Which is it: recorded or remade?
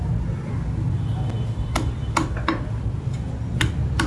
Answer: recorded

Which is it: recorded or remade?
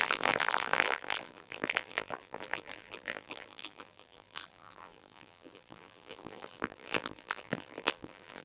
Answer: remade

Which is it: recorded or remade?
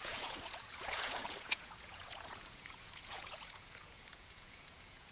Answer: remade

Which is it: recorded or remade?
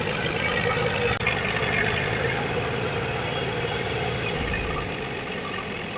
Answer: recorded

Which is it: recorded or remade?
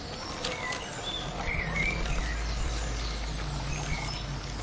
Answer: remade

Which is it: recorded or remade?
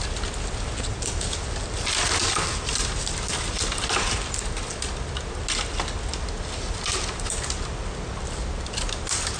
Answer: recorded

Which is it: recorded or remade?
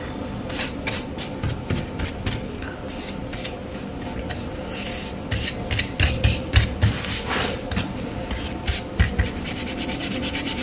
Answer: recorded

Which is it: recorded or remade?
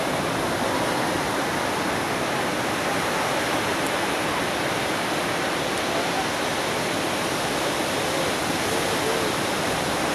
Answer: recorded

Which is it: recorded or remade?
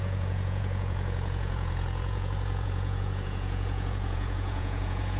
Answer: remade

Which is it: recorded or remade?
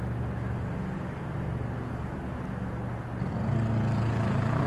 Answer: recorded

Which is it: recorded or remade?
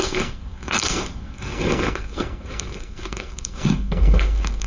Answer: remade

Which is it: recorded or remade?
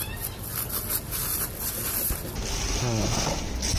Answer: recorded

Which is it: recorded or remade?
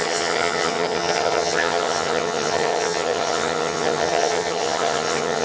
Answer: remade